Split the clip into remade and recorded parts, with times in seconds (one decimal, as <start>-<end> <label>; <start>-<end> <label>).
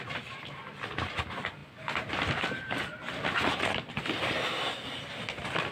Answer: 0.0-5.7 recorded